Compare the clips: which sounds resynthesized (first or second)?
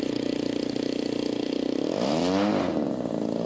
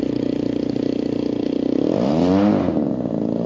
second